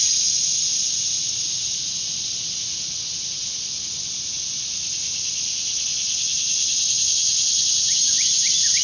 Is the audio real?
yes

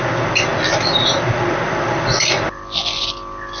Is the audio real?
yes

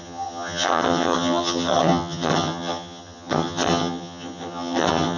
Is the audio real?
no